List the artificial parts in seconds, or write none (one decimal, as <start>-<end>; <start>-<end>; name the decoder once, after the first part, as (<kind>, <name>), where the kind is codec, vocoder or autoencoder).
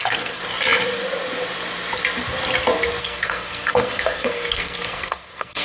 0.0-0.4 (codec, SNAC); 3.0-5.6